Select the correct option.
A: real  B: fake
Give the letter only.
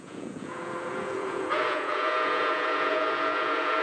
B